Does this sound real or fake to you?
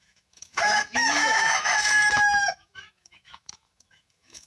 fake